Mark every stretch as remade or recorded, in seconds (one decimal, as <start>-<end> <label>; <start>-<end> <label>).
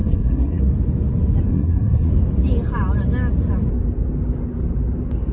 0.0-0.6 remade; 0.6-1.5 recorded; 1.5-2.1 remade; 2.1-5.3 recorded